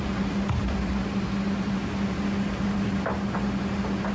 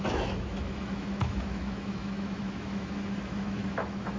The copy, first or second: second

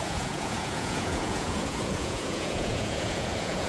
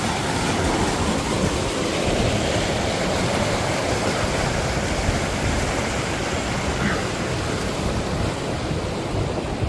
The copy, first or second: first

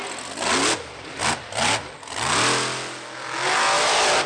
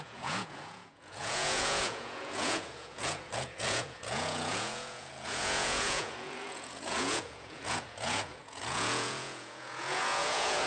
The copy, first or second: second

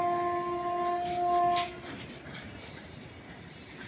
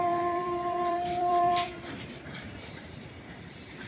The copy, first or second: second